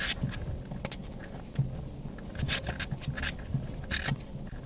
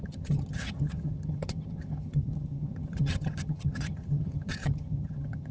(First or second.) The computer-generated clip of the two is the second